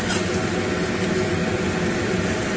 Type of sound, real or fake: real